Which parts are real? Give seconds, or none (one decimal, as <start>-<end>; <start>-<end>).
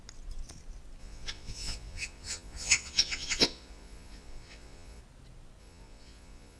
0.0-1.0; 5.0-5.6